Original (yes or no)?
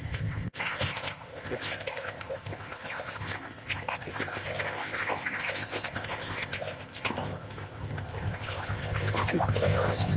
no